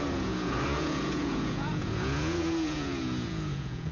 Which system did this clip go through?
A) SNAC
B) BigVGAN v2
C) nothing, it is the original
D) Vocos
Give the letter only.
D